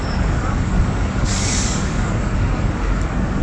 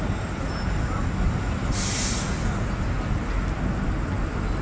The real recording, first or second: second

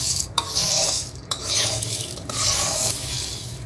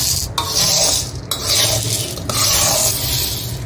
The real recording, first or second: second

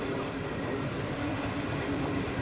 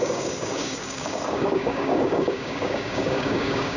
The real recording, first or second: first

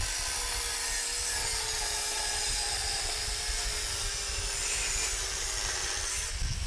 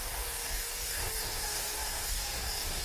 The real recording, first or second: first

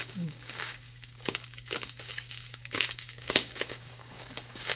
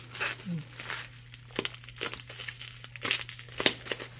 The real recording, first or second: second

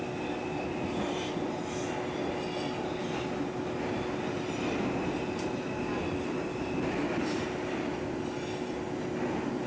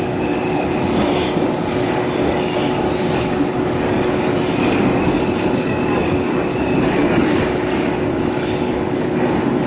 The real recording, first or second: first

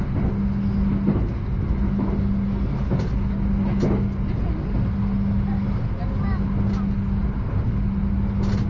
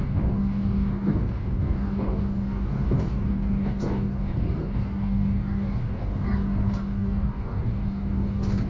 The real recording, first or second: first